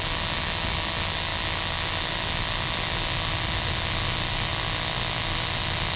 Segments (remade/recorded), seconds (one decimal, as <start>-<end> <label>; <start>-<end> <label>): 0.0-6.0 recorded